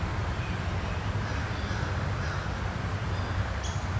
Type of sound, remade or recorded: recorded